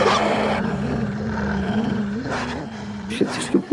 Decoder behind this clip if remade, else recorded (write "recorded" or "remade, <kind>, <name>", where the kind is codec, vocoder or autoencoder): remade, vocoder, BigVGAN v2